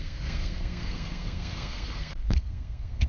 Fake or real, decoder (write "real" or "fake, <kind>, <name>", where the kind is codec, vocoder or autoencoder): fake, codec, SNAC